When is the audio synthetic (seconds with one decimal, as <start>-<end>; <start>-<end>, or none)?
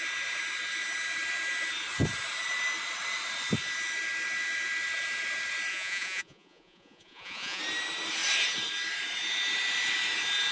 5.7-7.6